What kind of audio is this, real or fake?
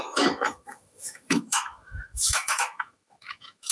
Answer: fake